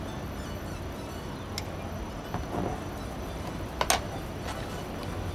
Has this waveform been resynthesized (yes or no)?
no